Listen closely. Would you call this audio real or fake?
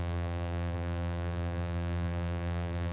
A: fake